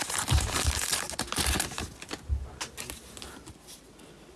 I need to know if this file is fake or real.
real